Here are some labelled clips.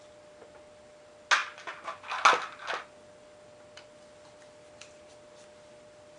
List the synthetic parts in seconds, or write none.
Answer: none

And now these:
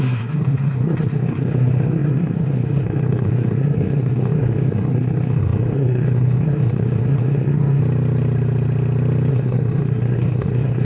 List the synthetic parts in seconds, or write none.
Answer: 0.0-7.8 (codec, SNAC); 9.3-10.8

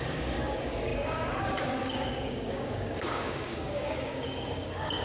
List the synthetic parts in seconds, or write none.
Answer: 0.0-5.0 (codec, DAC)

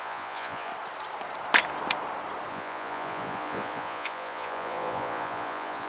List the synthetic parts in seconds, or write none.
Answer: 0.0-0.7 (vocoder, Vocos); 2.5-5.9

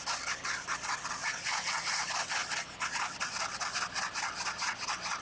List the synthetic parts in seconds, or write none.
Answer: 1.2-2.0 (vocoder, Vocos)